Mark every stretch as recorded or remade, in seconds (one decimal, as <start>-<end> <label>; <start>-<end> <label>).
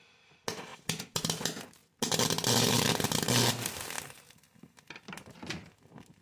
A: 0.0-6.2 recorded